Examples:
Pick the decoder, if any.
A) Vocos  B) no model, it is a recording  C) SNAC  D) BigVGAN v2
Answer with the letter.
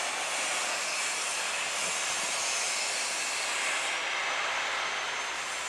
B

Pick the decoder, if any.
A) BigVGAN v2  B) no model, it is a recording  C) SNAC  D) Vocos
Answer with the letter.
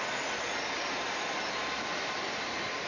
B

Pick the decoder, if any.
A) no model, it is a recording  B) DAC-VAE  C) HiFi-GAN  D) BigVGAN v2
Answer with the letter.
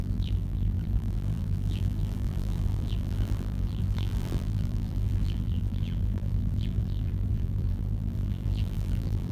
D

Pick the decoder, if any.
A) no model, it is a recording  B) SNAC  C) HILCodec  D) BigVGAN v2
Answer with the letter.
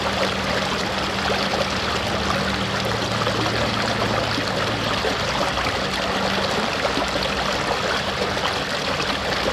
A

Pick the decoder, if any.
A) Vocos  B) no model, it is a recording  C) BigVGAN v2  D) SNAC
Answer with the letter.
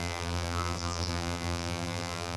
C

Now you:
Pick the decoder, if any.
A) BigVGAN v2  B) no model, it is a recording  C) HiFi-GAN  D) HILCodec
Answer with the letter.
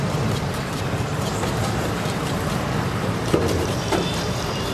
A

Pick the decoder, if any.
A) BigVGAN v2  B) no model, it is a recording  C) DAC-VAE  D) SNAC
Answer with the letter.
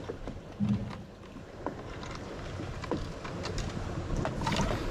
B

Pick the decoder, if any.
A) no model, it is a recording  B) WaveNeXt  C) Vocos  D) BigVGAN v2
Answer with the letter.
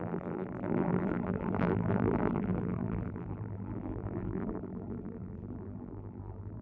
D